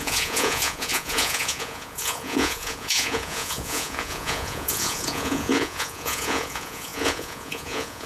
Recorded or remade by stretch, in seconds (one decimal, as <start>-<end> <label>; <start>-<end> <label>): 0.0-8.1 remade